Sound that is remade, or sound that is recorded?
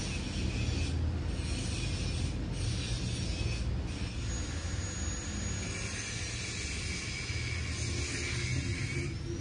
recorded